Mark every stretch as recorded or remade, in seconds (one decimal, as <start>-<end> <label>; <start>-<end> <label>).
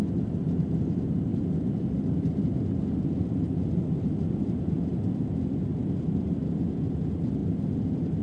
0.0-1.3 recorded; 1.3-4.3 remade; 4.3-4.9 recorded; 4.9-6.4 remade; 6.4-7.4 recorded; 7.4-8.2 remade